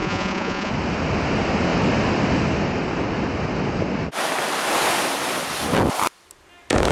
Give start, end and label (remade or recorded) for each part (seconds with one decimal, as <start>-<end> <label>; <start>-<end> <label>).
0.0-0.7 remade; 0.7-6.9 recorded